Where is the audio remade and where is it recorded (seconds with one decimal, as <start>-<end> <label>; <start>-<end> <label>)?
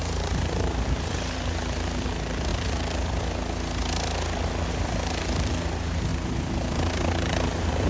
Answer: 0.0-2.1 remade; 2.1-6.1 recorded; 6.1-7.9 remade